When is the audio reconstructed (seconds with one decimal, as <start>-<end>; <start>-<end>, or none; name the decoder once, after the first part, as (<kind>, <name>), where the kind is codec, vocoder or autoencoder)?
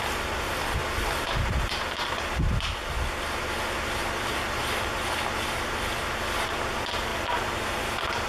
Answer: 4.0-5.2 (vocoder, BigVGAN v2)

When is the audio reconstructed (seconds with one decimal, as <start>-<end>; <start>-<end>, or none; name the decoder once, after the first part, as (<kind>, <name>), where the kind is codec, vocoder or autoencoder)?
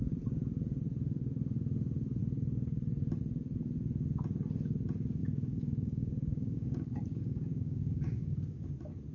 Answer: 5.2-8.7 (codec, DAC)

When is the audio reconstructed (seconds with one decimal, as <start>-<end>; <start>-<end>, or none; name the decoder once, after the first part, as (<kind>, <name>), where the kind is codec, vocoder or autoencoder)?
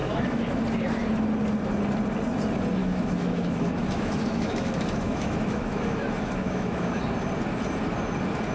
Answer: 0.0-0.6 (autoencoder, DAC-VAE); 2.8-7.0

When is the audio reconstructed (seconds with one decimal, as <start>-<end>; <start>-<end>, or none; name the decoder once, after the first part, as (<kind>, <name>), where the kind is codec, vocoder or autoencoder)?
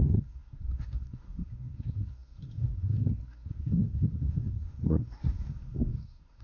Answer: 0.0-6.4 (codec, SNAC)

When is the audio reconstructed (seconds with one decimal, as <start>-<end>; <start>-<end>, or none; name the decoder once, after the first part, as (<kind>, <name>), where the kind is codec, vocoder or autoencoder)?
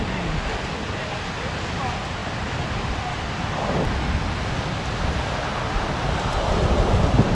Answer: none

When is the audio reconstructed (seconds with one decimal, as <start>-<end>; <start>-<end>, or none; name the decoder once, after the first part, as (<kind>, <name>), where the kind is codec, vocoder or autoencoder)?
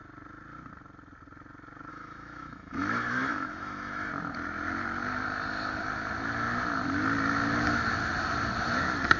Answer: 1.9-4.1 (autoencoder, DAC-VAE)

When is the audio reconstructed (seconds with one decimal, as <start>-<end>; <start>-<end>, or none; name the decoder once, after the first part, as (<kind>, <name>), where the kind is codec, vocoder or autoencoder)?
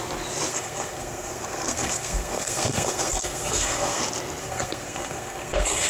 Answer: 0.5-4.0 (codec, SNAC); 4.4-5.9